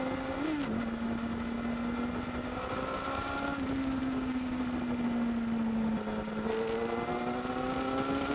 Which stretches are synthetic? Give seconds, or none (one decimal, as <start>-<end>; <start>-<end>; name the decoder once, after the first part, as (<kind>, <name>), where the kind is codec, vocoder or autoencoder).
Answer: 4.0-4.6 (codec, DAC)